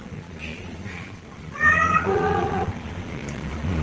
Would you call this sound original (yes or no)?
no